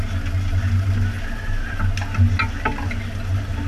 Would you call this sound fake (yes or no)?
no